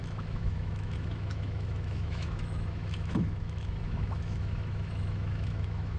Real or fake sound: fake